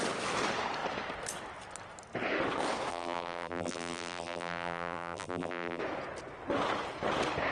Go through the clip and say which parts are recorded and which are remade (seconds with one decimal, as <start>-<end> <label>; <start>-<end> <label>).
0.0-2.9 recorded; 2.9-5.8 remade; 5.8-7.5 recorded